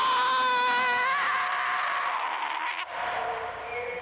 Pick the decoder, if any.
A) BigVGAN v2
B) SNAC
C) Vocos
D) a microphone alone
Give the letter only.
D